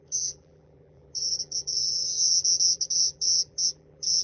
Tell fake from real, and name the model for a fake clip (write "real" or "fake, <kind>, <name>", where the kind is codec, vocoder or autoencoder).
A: fake, vocoder, BigVGAN v2